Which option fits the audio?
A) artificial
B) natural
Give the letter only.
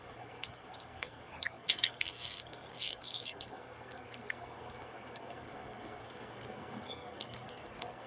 A